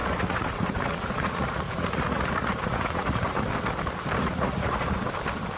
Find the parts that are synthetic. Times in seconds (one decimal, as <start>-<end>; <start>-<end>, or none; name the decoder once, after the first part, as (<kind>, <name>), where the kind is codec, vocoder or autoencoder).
0.0-3.4 (vocoder, Vocos); 4.2-5.0